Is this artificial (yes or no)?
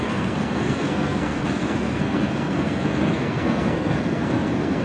yes